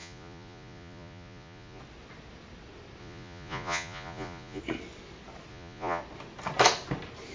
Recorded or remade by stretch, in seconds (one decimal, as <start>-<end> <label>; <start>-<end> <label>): 0.0-1.8 remade; 1.8-3.0 recorded; 3.0-4.6 remade; 4.6-5.5 recorded; 5.5-6.0 remade; 6.0-7.3 recorded